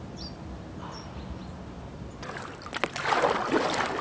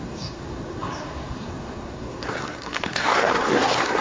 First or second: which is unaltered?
first